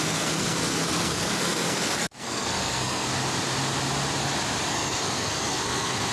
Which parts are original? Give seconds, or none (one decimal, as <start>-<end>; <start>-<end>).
3.1-4.7